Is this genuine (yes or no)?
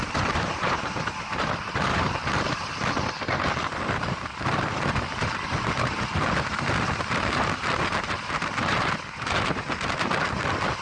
yes